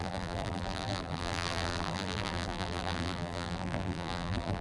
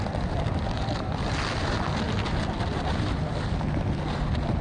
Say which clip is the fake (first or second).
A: first